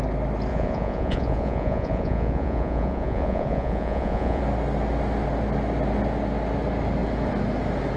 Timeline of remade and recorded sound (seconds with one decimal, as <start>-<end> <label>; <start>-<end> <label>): 0.0-0.5 recorded; 0.5-4.4 remade; 4.4-8.0 recorded